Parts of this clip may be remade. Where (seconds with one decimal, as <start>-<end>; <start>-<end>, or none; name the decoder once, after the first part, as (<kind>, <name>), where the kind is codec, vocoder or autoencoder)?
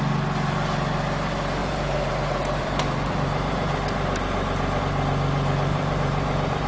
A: 1.6-4.8 (vocoder, BigVGAN v2); 5.7-6.7